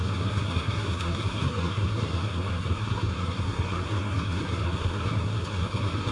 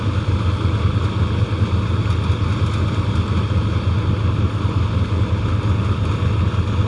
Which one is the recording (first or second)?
second